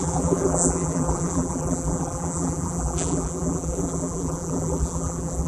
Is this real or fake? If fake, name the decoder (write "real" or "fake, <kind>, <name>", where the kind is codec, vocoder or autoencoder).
fake, vocoder, BigVGAN v2